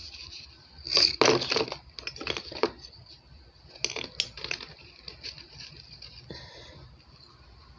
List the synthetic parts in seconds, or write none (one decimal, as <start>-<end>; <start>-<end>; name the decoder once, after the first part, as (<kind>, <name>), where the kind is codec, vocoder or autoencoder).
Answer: none